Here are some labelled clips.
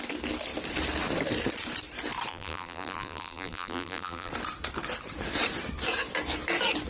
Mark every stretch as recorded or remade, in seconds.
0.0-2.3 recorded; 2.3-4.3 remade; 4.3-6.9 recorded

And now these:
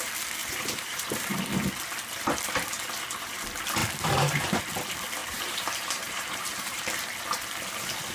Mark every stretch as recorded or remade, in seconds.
0.0-0.4 recorded; 0.4-1.4 remade; 1.4-3.8 recorded; 3.8-4.6 remade; 4.6-5.2 recorded; 5.2-6.8 remade; 6.8-8.1 recorded

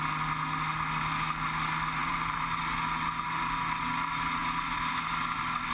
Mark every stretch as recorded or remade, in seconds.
0.0-2.0 recorded; 2.0-2.6 remade; 2.6-5.7 recorded

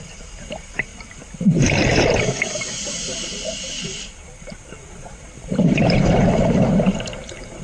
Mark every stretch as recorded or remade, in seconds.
0.0-7.6 remade

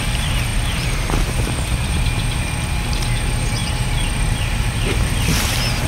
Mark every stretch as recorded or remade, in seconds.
0.0-0.5 recorded; 0.5-1.9 remade; 1.9-3.6 recorded; 3.6-5.1 remade; 5.1-5.9 recorded

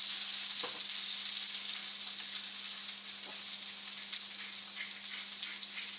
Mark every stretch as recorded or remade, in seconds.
0.0-6.0 recorded